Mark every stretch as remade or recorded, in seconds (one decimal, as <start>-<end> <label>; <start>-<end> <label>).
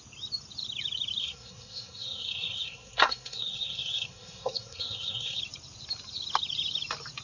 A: 0.0-1.2 recorded; 1.2-5.4 remade; 5.4-7.2 recorded